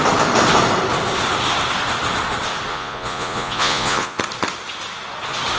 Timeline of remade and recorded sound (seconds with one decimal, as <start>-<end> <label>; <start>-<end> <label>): 0.0-2.7 recorded; 2.7-4.2 remade; 4.2-5.6 recorded